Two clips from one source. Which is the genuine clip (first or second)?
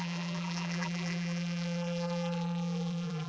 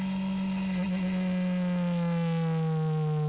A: second